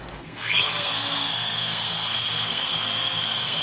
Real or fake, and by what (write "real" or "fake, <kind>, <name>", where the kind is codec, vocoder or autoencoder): fake, codec, SNAC